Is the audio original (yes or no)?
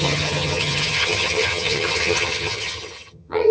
no